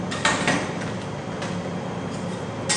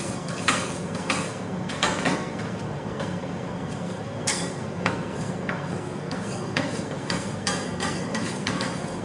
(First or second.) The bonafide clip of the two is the first